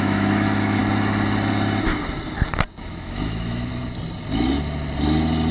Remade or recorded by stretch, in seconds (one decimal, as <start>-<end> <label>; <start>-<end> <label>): 0.0-0.8 remade; 0.8-2.8 recorded; 2.8-3.7 remade; 3.7-5.5 recorded